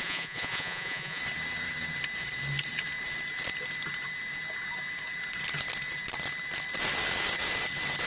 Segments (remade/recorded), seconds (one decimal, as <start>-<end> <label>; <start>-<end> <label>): 0.0-1.2 remade; 1.2-8.1 recorded